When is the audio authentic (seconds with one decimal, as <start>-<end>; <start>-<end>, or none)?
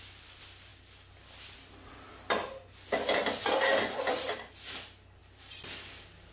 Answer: 0.0-6.3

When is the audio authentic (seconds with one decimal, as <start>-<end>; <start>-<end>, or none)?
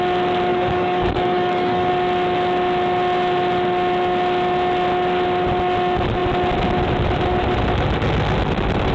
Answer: 0.0-0.5; 1.9-8.9